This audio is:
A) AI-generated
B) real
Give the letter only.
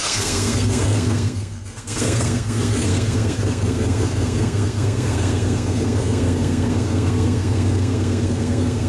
A